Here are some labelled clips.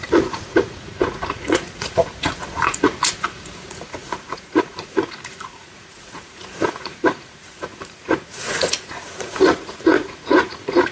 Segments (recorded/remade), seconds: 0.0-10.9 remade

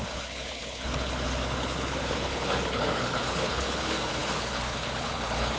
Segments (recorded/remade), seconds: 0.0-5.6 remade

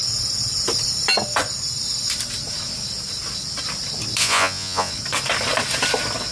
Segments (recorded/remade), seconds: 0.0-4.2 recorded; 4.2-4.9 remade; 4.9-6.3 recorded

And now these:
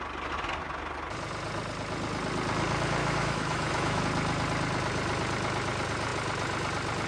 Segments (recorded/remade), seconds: 0.0-3.0 recorded; 3.0-4.0 remade; 4.0-7.1 recorded

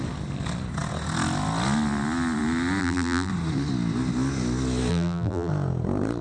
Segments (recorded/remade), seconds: 0.0-2.8 recorded; 2.8-3.3 remade; 3.3-4.9 recorded; 4.9-5.5 remade; 5.5-6.2 recorded

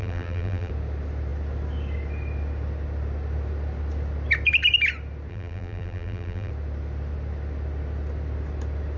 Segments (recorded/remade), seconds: 0.0-0.7 remade; 0.7-5.3 recorded; 5.3-6.5 remade; 6.5-9.0 recorded

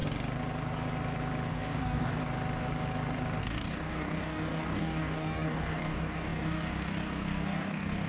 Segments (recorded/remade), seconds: 0.0-1.5 recorded; 1.5-2.2 remade; 2.2-3.4 recorded; 3.4-8.1 remade